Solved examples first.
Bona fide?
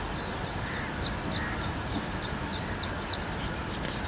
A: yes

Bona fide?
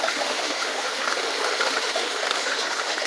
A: no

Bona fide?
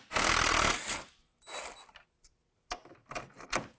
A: yes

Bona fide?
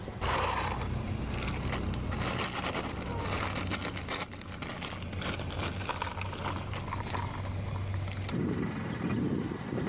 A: yes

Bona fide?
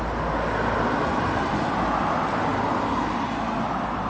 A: yes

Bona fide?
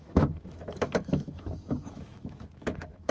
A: no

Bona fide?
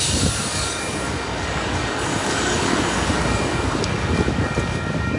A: no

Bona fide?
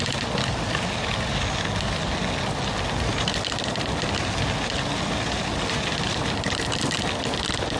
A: yes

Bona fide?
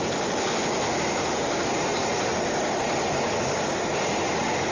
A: no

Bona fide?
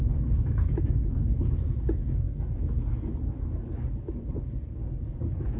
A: yes